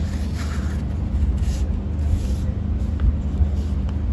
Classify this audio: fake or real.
real